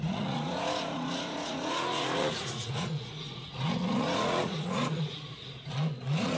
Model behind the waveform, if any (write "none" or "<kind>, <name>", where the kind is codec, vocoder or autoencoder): vocoder, Vocos